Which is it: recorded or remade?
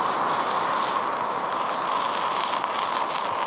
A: recorded